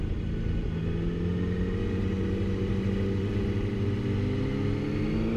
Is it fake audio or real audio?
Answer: real